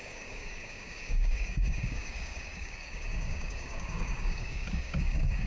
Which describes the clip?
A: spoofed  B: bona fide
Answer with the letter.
A